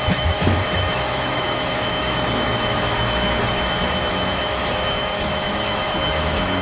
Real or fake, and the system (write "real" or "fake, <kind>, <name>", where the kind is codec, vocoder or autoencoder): fake, autoencoder, DAC-VAE